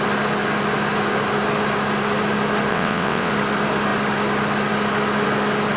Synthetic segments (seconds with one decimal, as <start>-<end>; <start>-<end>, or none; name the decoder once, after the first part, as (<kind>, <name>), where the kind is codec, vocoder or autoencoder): 2.7-3.3 (vocoder, WaveNeXt)